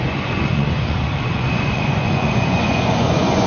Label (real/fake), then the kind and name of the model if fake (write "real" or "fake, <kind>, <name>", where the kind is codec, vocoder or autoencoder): fake, vocoder, Vocos